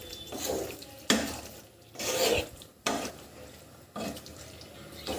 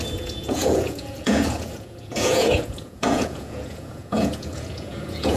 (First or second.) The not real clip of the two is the second